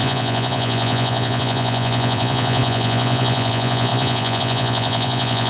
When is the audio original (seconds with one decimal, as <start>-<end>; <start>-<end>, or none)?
none